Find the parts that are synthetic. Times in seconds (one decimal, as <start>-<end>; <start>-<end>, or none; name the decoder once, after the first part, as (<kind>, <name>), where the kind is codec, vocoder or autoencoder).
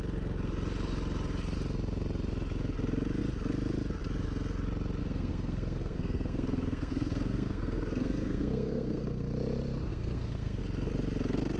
5.0-9.3 (codec, SNAC); 9.9-10.6